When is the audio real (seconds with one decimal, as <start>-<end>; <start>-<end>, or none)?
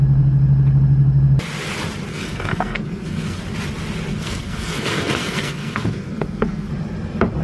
0.0-2.1; 3.4-4.1; 6.7-7.4